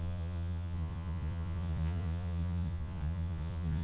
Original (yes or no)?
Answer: no